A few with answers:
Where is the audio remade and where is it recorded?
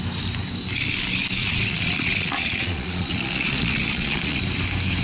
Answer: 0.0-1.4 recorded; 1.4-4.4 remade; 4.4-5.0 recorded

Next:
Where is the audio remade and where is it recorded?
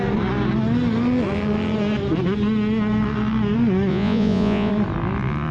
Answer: 0.0-3.9 recorded; 3.9-4.7 remade; 4.7-5.5 recorded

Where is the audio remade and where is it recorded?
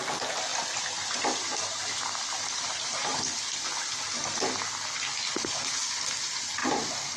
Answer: 0.0-7.2 recorded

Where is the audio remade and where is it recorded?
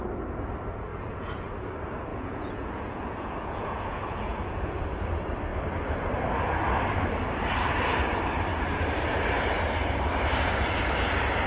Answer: 0.0-0.9 recorded; 0.9-1.5 remade; 1.5-2.1 recorded; 2.1-4.8 remade; 4.8-11.5 recorded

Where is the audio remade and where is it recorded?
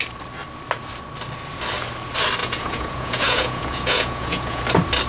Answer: 0.0-2.4 recorded; 2.4-4.6 remade; 4.6-5.1 recorded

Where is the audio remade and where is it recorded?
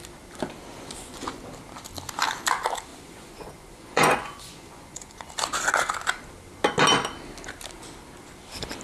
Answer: 0.0-0.7 recorded; 0.7-1.4 remade; 1.4-2.9 recorded; 2.9-5.3 remade; 5.3-8.8 recorded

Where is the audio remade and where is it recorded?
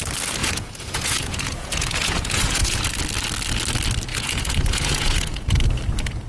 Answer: 0.0-0.4 recorded; 0.4-2.9 remade; 2.9-4.1 recorded; 4.1-5.6 remade; 5.6-6.3 recorded